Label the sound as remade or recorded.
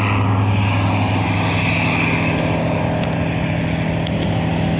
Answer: recorded